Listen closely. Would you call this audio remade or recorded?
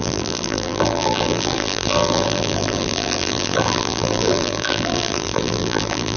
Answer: remade